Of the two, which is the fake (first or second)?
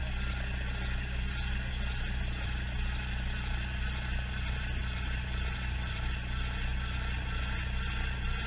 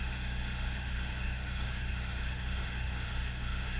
second